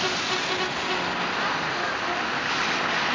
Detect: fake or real real